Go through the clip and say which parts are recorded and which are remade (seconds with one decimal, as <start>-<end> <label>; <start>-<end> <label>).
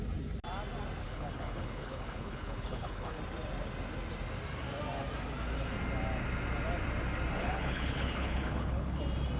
0.0-1.0 recorded; 1.0-3.2 remade; 3.2-7.4 recorded; 7.4-9.0 remade; 9.0-9.4 recorded